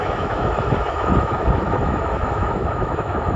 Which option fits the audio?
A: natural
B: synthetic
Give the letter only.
B